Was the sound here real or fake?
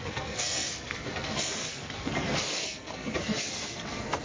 fake